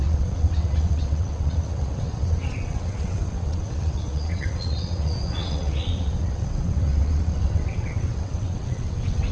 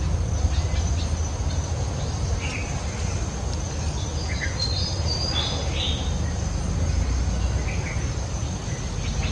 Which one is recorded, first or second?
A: second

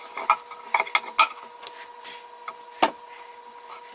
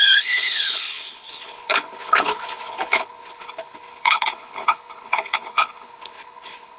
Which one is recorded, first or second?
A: first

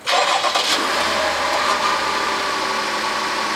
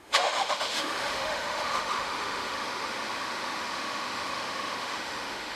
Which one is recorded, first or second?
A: first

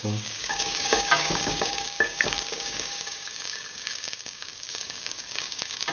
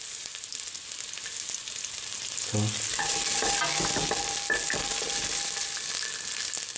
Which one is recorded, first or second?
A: second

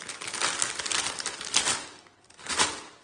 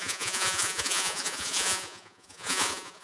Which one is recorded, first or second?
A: first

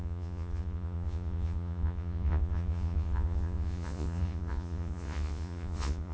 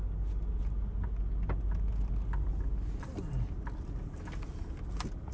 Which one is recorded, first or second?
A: second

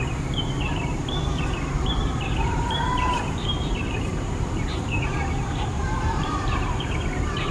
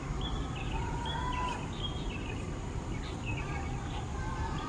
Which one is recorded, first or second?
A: second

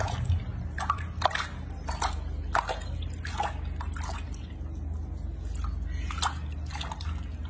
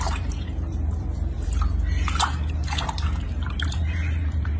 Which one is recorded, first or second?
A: first